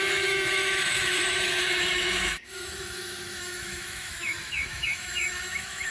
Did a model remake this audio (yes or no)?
yes